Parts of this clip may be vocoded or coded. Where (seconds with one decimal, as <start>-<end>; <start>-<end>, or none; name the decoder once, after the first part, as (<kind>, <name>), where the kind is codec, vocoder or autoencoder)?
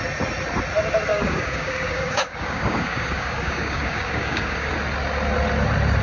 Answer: 1.1-4.7 (codec, DAC)